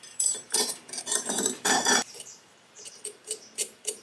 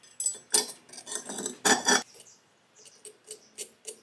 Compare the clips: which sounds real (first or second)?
second